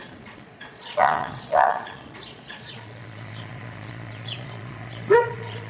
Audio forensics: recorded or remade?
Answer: remade